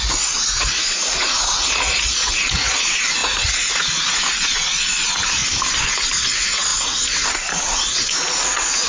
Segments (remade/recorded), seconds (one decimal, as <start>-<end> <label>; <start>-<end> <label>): 0.0-5.4 remade; 5.4-5.9 recorded; 5.9-8.9 remade